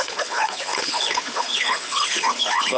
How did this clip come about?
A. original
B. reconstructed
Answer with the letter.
B